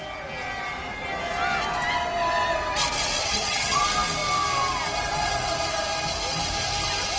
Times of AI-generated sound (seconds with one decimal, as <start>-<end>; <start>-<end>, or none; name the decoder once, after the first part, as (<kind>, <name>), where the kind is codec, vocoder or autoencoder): 3.2-3.8 (vocoder, HiFi-GAN)